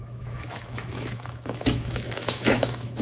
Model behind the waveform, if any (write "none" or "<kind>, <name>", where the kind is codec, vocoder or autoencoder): autoencoder, DAC-VAE